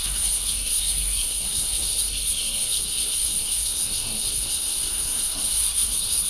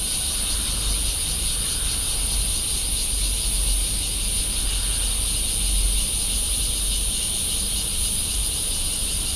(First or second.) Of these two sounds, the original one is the second